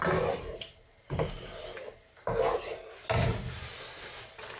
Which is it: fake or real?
real